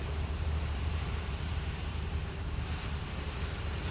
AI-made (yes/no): yes